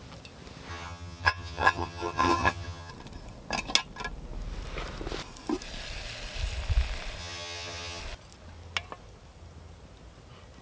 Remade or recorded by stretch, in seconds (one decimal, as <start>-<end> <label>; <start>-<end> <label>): 0.0-0.7 recorded; 0.7-2.9 remade; 2.9-7.2 recorded; 7.2-8.0 remade; 8.0-10.6 recorded